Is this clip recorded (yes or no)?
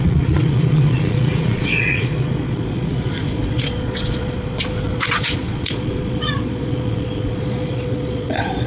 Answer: no